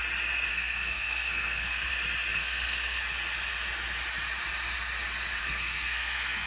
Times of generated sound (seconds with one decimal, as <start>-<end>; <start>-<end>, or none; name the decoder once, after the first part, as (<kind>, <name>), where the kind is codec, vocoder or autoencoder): 0.5-1.9 (codec, SNAC); 2.3-3.0; 5.4-6.5